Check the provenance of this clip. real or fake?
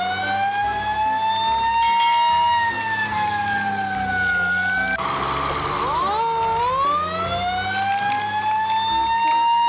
real